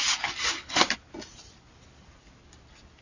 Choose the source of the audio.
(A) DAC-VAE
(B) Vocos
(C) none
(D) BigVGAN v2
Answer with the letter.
C